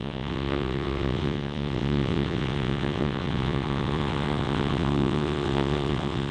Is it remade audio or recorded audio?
remade